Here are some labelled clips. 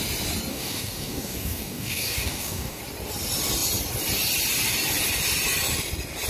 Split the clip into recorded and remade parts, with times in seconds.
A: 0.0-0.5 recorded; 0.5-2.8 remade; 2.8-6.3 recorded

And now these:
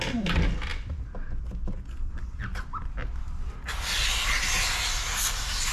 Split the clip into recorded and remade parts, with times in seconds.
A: 0.0-5.7 recorded

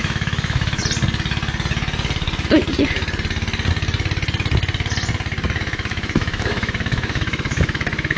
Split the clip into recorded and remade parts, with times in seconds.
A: 0.0-0.8 remade; 0.8-5.6 recorded; 5.6-8.2 remade

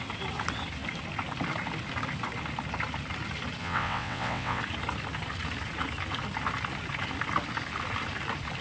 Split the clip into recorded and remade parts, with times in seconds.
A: 0.0-3.6 recorded; 3.6-4.6 remade; 4.6-8.6 recorded

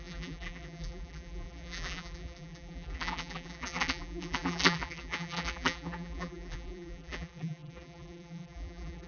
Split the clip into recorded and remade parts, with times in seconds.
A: 0.0-9.1 remade